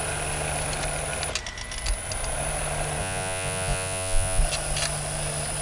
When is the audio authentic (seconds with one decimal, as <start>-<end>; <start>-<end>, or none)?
0.0-3.0; 4.4-5.6